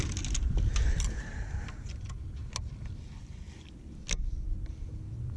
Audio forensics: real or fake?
real